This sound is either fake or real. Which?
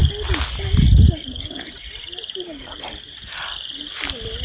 real